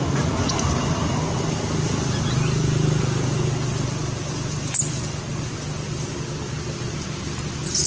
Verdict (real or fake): real